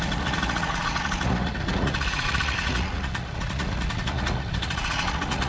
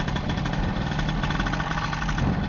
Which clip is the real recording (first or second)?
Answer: second